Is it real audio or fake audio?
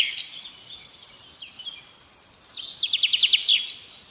real